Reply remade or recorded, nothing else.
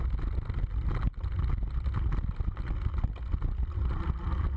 recorded